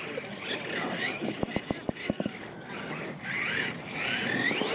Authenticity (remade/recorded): recorded